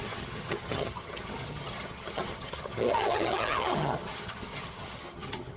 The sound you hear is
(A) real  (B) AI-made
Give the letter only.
B